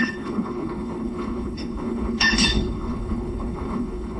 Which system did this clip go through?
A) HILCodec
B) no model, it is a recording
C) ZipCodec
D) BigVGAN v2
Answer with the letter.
A